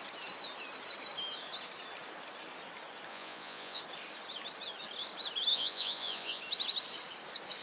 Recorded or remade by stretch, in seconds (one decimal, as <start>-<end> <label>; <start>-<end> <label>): 0.0-3.1 recorded; 3.1-3.8 remade; 3.8-5.5 recorded; 5.5-6.4 remade; 6.4-7.6 recorded

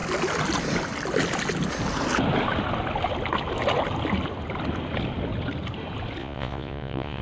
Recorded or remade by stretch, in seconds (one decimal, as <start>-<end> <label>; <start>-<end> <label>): 0.0-6.2 recorded; 6.2-7.2 remade

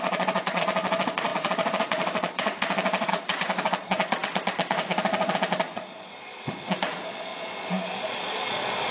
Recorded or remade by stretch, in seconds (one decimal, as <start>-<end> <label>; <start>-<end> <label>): 0.0-8.9 remade

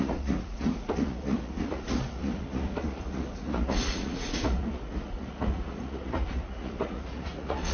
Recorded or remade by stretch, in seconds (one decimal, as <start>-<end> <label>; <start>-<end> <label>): 0.0-7.7 remade